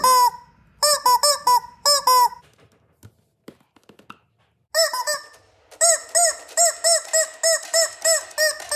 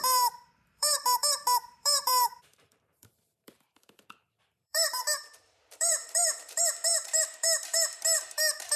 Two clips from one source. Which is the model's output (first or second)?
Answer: second